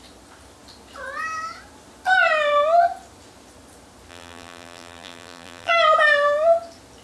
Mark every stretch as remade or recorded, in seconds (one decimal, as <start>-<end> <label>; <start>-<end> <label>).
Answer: 0.0-4.1 recorded; 4.1-5.7 remade; 5.7-7.0 recorded